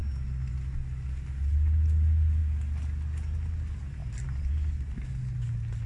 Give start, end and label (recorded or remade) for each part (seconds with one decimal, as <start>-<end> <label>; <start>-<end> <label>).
0.0-4.0 recorded; 4.0-4.5 remade; 4.5-5.9 recorded